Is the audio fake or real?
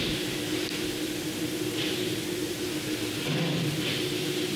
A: real